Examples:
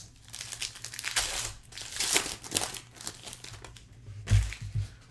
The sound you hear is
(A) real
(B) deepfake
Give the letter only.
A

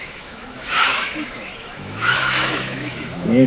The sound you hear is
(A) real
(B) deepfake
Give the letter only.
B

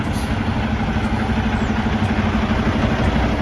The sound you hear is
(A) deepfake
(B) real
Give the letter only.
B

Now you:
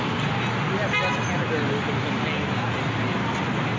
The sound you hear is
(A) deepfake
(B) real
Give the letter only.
B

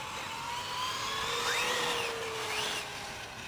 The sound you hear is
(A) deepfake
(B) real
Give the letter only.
B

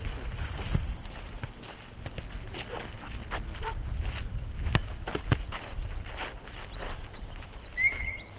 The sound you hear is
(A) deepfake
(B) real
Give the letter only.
B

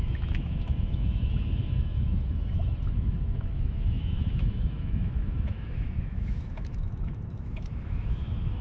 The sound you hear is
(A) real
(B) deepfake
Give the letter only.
B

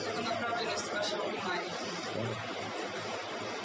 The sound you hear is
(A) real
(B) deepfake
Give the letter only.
A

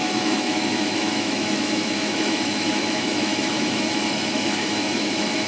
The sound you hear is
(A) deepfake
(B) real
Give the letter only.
A